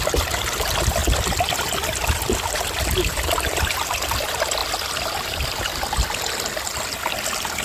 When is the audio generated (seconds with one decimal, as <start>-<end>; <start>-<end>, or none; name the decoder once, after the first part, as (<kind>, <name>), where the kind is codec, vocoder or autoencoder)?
3.1-3.7 (vocoder, BigVGAN v2); 4.6-5.6